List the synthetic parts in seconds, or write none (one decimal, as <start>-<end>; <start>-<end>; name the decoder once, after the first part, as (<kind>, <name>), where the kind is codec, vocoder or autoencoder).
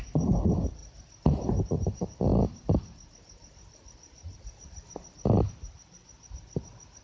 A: none